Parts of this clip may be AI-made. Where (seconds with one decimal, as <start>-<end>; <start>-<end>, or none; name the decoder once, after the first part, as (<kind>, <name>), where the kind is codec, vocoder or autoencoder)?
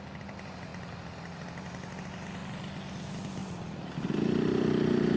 none